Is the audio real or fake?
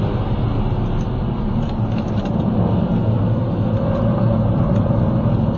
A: real